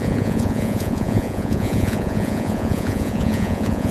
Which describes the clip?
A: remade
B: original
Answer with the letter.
A